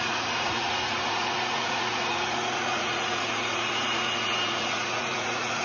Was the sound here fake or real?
fake